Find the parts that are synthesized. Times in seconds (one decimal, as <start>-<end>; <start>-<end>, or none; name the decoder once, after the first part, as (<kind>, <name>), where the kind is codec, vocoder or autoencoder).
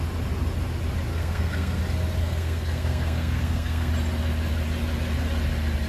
1.1-1.8 (codec, SNAC); 2.2-3.9